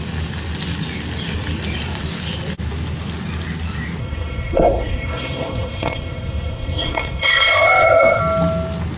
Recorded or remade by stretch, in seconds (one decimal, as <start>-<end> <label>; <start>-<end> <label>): 0.0-4.0 recorded; 4.0-8.2 remade; 8.2-9.0 recorded